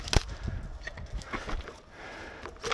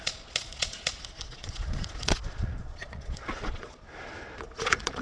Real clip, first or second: first